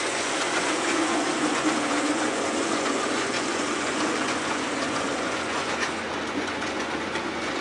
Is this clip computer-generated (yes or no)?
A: yes